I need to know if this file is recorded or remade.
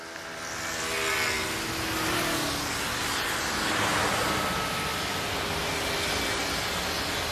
recorded